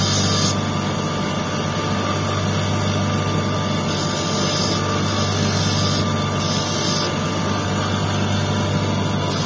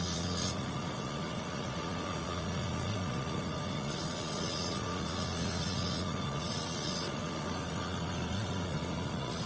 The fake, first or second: second